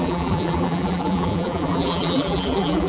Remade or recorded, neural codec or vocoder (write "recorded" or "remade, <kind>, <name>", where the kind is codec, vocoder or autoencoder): remade, vocoder, BigVGAN v2